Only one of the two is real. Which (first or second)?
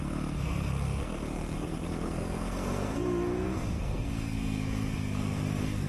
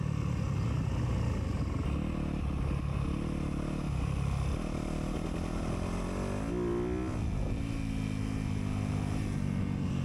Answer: second